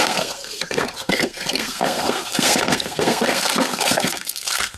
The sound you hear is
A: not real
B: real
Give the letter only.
A